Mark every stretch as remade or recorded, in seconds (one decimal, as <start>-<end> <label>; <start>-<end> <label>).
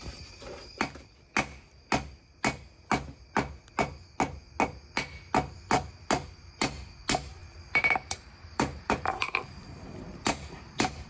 0.0-7.4 recorded; 7.4-11.1 remade